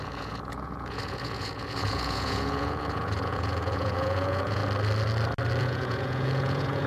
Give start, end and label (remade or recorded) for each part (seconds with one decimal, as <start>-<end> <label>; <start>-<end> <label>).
0.0-4.6 remade; 4.6-5.6 recorded; 5.6-6.9 remade